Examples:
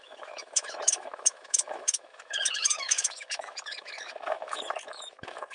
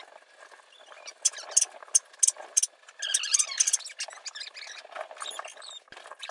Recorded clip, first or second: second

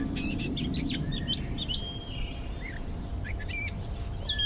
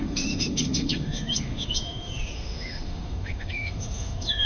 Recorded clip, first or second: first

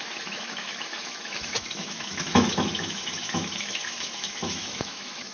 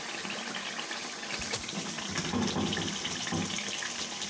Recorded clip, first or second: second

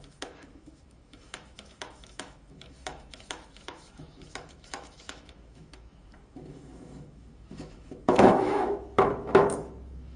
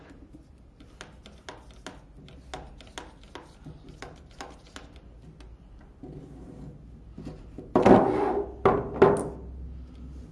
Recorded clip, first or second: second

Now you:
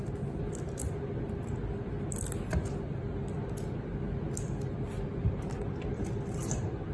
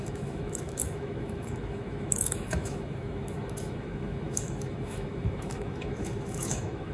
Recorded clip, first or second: first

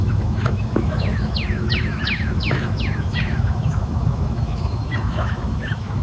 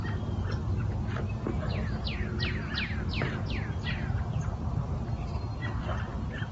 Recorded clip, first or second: second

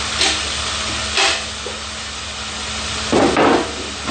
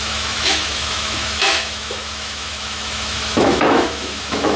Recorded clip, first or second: first